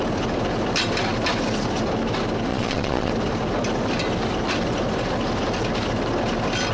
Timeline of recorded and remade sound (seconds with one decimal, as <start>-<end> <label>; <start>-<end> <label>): 0.0-2.5 recorded; 2.5-3.1 remade; 3.1-6.7 recorded